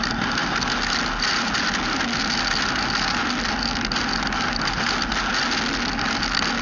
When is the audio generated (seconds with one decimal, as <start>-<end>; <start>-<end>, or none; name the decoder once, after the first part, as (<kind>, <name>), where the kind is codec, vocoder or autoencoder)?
none